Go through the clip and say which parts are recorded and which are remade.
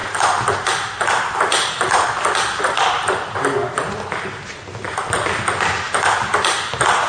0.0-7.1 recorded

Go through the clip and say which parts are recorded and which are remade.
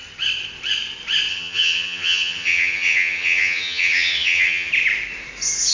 0.0-1.3 recorded; 1.3-4.7 remade; 4.7-5.7 recorded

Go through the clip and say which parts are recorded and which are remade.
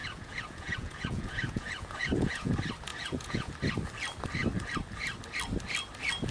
0.0-2.5 remade; 2.5-2.9 recorded; 2.9-3.5 remade; 3.5-6.3 recorded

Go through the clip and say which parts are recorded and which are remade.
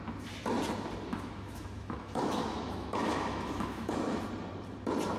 0.0-1.1 recorded; 1.1-4.2 remade; 4.2-5.2 recorded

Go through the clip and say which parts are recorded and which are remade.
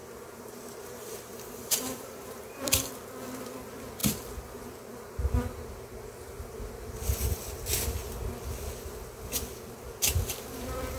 0.0-2.9 remade; 2.9-11.0 recorded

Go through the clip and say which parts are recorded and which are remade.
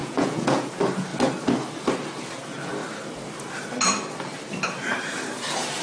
0.0-0.7 remade; 0.7-5.8 recorded